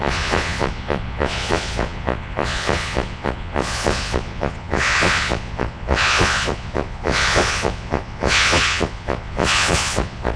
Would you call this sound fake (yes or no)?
yes